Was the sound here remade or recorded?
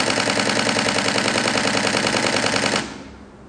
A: recorded